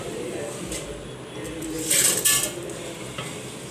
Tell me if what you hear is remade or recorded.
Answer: recorded